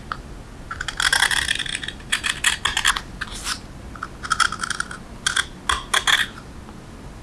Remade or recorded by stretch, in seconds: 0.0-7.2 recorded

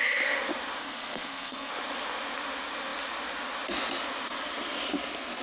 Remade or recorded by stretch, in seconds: 0.0-0.8 recorded; 0.8-1.7 remade; 1.7-5.4 recorded

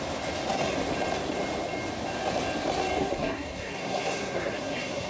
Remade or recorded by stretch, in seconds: 0.0-3.0 recorded; 3.0-5.1 remade